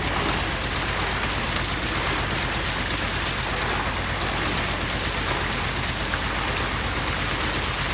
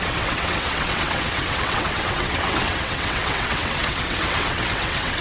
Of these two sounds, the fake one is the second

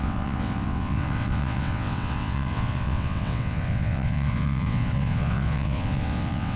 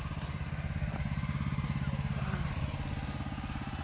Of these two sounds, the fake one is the first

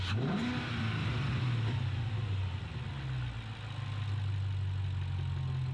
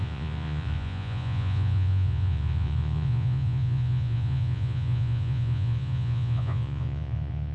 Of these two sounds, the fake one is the second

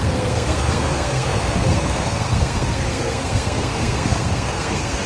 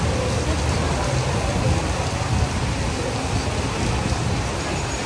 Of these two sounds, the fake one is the first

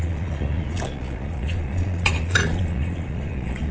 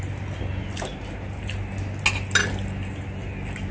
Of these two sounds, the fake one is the first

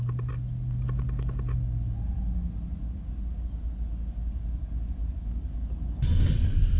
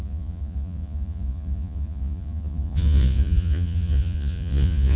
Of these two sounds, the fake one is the second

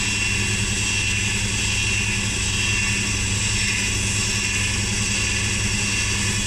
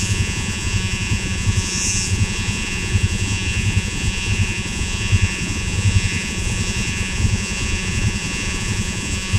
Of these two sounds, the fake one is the second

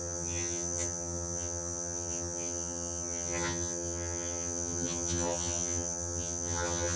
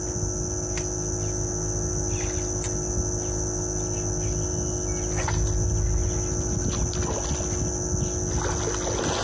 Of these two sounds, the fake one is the first